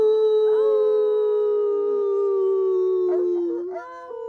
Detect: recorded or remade recorded